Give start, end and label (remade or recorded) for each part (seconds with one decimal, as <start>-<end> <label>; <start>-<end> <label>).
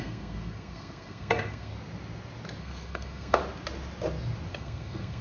0.0-1.7 remade; 1.7-2.6 recorded; 2.6-3.4 remade; 3.4-4.5 recorded; 4.5-5.2 remade